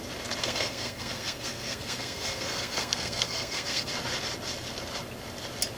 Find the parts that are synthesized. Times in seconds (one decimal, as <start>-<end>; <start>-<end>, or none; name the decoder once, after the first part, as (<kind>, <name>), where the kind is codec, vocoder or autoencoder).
0.4-3.9 (codec, SNAC)